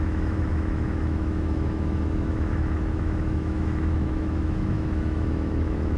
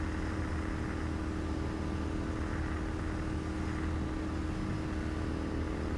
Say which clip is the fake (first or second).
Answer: first